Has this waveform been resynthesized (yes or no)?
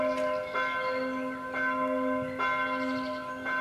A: no